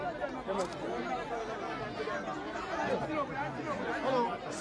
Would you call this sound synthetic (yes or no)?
no